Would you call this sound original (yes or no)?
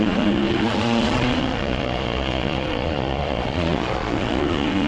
no